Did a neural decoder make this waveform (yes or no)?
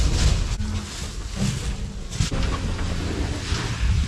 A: no